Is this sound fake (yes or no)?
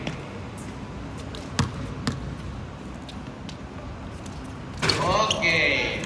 no